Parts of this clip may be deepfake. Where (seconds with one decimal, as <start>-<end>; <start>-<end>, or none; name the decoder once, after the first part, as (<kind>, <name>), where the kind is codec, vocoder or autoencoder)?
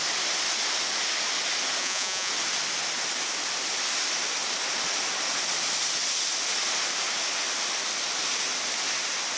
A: 1.8-2.3 (vocoder, Vocos)